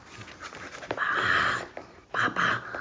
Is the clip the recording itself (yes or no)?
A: yes